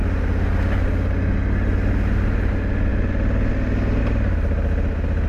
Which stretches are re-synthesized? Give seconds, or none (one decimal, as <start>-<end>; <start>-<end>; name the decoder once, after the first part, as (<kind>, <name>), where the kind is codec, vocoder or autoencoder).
none